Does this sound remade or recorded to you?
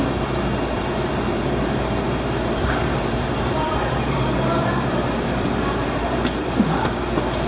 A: remade